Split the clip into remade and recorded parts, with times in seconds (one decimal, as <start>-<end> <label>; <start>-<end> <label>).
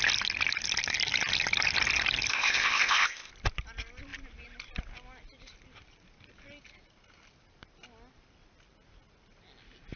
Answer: 0.0-2.3 recorded; 2.3-3.3 remade; 3.3-10.0 recorded